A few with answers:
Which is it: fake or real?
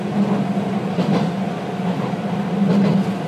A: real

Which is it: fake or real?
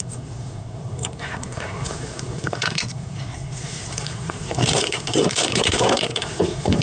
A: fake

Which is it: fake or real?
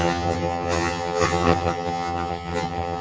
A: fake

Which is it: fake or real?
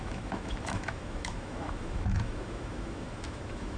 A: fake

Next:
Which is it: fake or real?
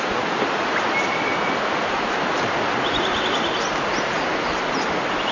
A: real